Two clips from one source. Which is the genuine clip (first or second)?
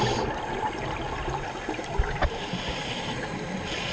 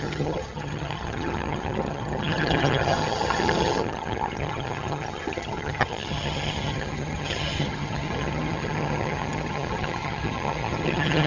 first